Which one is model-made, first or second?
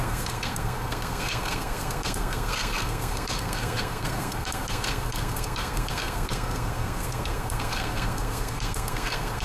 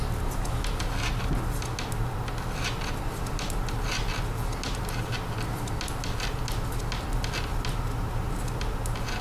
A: first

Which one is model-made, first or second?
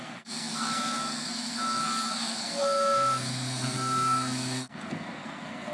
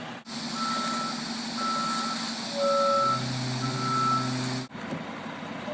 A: first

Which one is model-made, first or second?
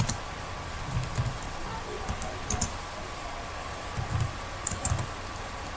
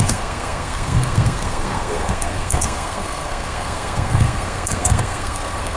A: second